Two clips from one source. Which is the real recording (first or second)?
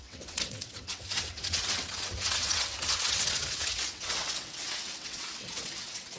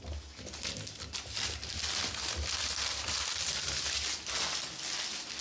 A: second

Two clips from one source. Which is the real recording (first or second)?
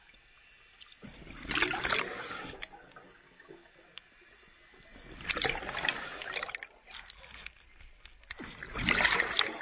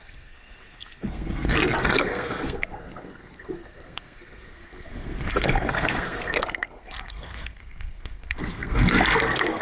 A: first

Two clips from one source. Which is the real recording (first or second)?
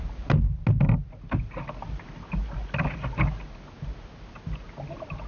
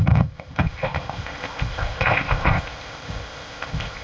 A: first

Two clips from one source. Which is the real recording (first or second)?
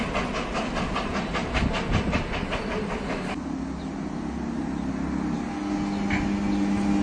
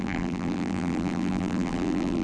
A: first